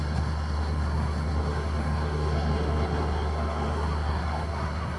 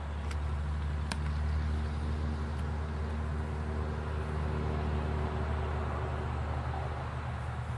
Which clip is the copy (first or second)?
first